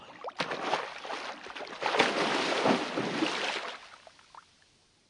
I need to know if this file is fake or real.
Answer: real